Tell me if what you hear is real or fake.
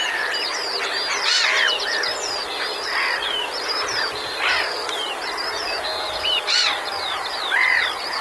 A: fake